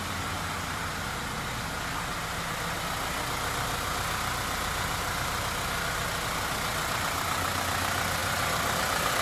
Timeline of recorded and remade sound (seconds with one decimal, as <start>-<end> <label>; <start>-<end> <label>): 0.0-9.2 recorded